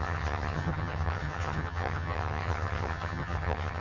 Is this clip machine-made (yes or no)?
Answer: yes